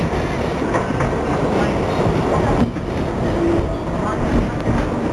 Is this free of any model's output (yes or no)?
yes